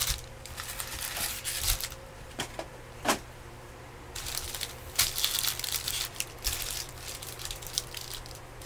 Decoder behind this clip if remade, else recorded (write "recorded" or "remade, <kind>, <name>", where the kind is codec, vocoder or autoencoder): remade, vocoder, BigVGAN v2